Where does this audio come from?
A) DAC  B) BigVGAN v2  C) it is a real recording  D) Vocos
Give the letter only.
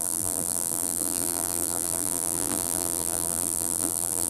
B